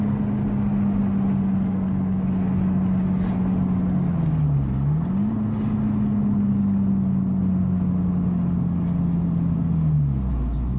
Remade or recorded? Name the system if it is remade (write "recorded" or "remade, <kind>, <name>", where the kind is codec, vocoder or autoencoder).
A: recorded